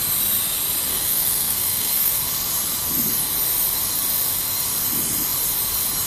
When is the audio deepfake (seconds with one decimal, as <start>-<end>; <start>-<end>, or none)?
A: 0.9-2.2